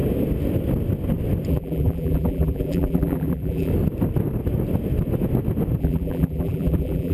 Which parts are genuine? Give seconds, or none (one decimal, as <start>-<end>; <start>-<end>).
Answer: 0.0-1.5; 3.7-5.8